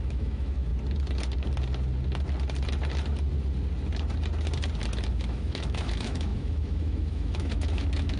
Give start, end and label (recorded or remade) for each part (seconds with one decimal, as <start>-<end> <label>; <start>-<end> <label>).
0.0-0.7 remade; 0.7-5.1 recorded; 5.1-8.2 remade